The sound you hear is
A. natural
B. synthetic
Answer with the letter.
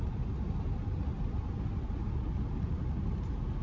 A